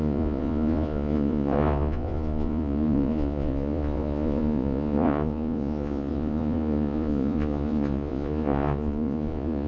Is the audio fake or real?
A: fake